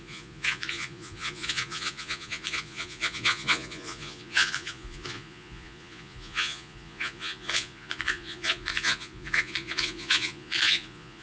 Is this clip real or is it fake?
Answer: fake